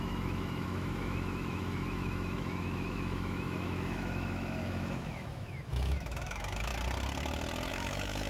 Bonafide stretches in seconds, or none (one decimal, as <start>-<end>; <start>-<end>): 6.7-7.7